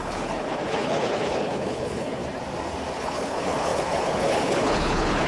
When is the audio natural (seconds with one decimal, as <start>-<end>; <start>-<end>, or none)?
2.2-2.9